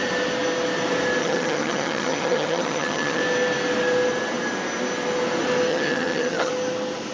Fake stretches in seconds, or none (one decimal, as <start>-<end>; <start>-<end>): 1.2-3.2; 5.7-6.5